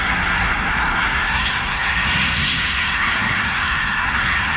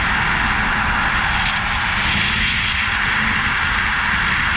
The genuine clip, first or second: second